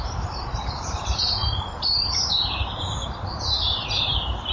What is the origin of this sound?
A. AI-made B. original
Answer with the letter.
A